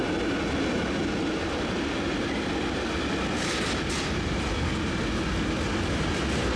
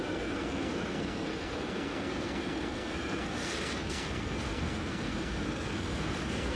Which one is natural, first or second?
first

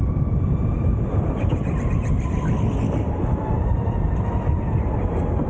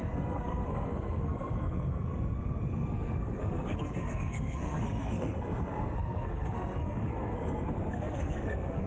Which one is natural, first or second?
first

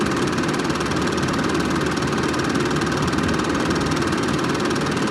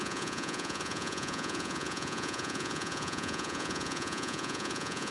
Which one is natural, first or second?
first